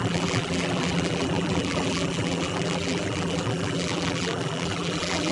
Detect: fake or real fake